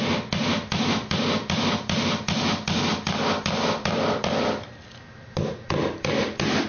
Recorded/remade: recorded